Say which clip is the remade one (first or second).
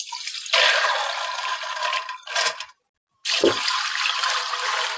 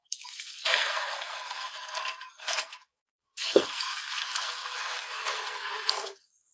second